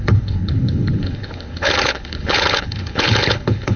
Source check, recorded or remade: remade